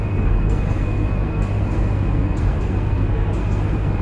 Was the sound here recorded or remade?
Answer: remade